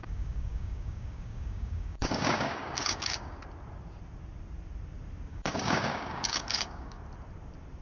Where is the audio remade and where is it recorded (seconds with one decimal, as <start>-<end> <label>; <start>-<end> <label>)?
0.0-3.4 remade; 3.4-5.3 recorded; 5.3-7.0 remade; 7.0-7.8 recorded